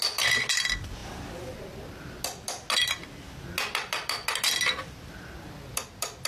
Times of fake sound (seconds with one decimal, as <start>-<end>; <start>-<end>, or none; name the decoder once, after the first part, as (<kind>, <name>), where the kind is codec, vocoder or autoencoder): none